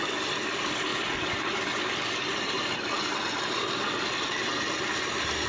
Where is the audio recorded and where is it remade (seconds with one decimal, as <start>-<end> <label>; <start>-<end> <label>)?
0.0-5.5 recorded